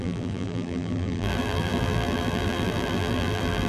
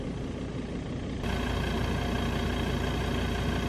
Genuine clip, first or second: second